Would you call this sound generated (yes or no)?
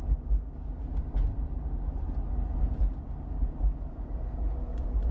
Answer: no